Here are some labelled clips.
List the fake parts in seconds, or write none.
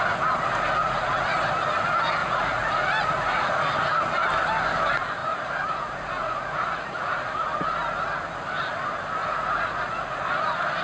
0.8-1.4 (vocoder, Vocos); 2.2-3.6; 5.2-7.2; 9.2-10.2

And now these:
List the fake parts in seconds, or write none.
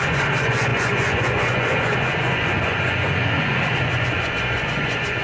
0.0-5.2 (vocoder, Vocos)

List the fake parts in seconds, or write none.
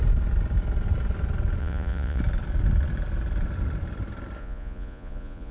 1.6-2.2 (vocoder, Vocos); 4.4-5.5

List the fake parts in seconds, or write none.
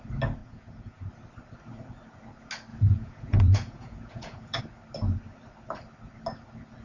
0.4-1.1 (vocoder, Vocos); 2.7-4.6